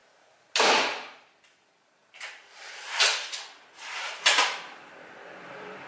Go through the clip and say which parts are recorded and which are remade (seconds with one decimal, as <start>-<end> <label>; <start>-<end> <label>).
0.0-0.7 recorded; 0.7-5.9 remade